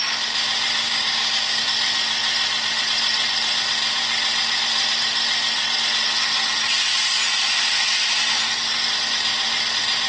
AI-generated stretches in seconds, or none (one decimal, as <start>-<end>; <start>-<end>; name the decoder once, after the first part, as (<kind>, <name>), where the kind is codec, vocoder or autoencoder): 0.8-1.6 (codec, DAC)